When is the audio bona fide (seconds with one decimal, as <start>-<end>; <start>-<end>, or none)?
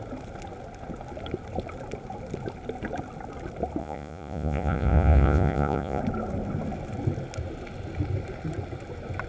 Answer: 0.0-3.8; 6.0-9.3